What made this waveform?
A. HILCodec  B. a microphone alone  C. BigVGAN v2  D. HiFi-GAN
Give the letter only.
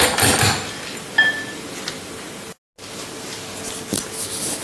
B